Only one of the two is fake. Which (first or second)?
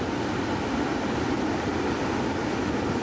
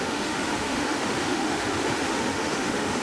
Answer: second